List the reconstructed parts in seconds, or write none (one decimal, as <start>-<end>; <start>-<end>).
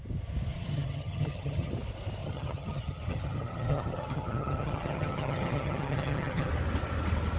0.5-1.7; 2.2-6.5